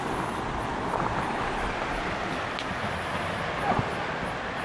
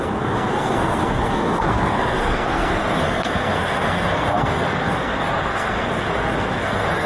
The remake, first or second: second